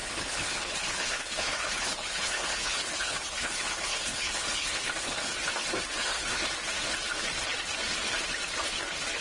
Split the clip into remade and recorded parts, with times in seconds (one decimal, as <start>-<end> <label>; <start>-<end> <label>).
0.0-5.3 remade; 5.3-6.0 recorded; 6.0-6.5 remade; 6.5-9.2 recorded

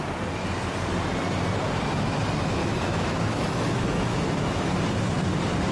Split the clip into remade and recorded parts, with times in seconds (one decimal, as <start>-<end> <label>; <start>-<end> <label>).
0.0-2.6 recorded; 2.6-4.7 remade; 4.7-5.7 recorded

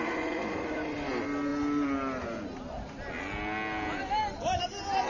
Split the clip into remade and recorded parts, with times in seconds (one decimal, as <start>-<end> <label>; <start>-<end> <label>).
0.0-5.1 recorded

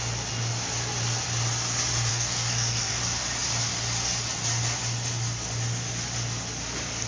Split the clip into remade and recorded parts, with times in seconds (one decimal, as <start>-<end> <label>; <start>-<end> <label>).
0.0-2.1 recorded; 2.1-3.0 remade; 3.0-7.1 recorded